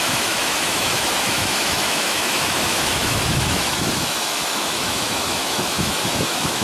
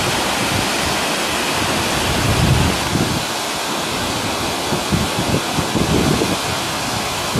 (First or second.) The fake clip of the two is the first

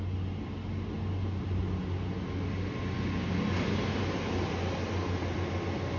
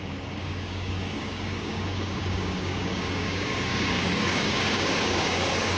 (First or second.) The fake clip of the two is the second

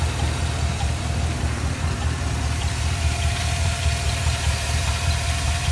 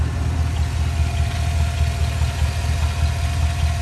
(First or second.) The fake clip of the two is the first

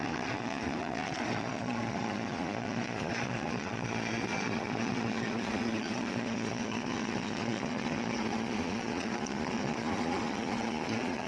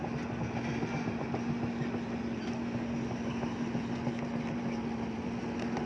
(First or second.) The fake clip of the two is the first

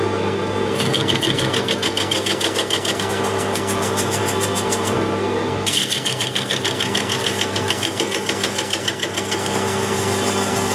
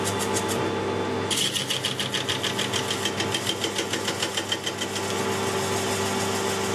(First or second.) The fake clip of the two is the first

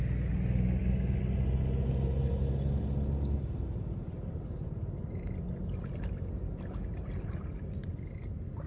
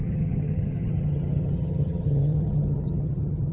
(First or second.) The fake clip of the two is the second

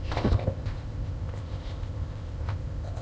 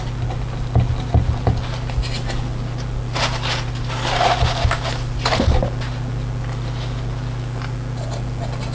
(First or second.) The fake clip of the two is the first